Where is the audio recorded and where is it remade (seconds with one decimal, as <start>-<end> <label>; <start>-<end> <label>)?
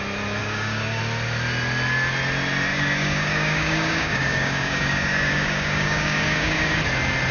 0.0-0.4 recorded; 0.4-1.0 remade; 1.0-2.7 recorded; 2.7-6.8 remade; 6.8-7.3 recorded